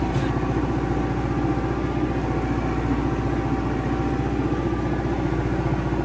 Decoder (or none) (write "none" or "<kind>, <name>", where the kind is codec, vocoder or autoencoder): none